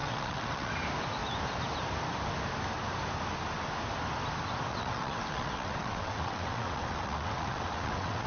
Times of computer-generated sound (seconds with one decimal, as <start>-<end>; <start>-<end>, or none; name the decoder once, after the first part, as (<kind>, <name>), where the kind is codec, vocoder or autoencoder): 0.0-0.7 (vocoder, WaveNeXt); 4.7-8.3